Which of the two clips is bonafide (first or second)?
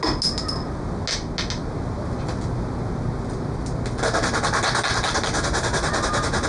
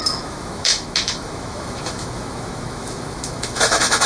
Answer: first